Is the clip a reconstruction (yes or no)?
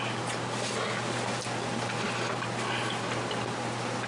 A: no